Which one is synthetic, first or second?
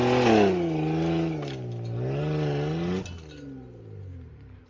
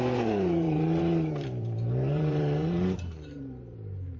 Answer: second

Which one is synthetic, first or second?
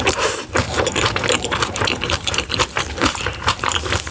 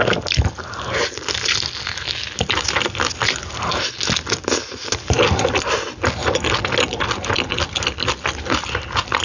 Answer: first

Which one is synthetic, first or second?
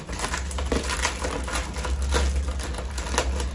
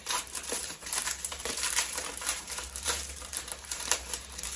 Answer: second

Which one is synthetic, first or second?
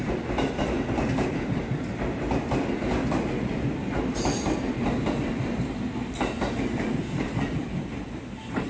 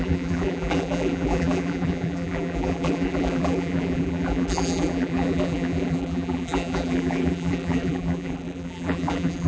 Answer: second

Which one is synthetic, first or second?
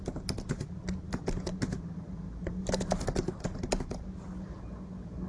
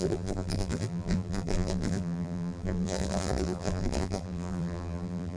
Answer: second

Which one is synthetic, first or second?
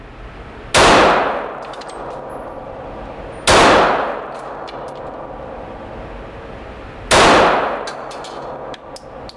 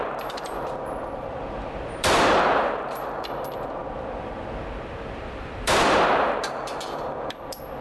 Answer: second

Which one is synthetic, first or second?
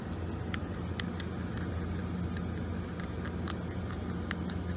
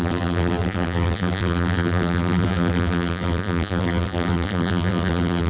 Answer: second